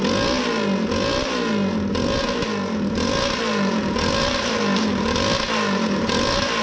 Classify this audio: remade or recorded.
recorded